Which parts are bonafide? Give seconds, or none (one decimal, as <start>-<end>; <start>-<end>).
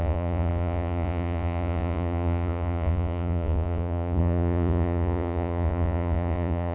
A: none